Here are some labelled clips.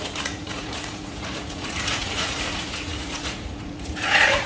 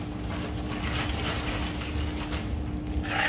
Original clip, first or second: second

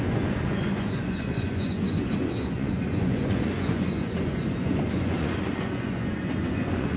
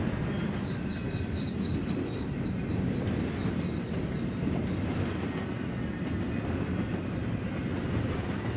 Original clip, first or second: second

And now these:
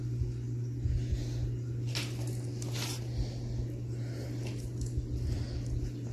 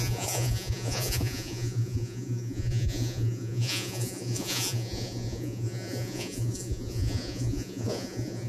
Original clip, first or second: first